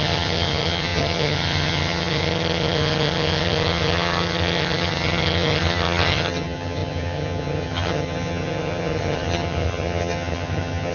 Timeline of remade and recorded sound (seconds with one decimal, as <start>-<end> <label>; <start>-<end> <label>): 0.0-10.9 remade